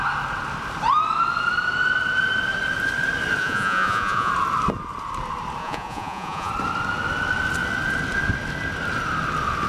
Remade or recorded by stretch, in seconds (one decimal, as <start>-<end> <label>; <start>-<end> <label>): 0.0-3.4 recorded; 3.4-4.3 remade; 4.3-5.6 recorded; 5.6-6.5 remade; 6.5-9.7 recorded